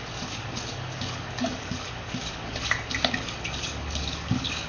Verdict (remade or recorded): remade